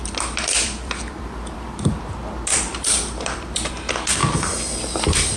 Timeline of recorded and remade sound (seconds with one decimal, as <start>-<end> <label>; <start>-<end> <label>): 0.0-2.0 remade; 2.0-2.5 recorded; 2.5-3.7 remade; 3.7-5.4 recorded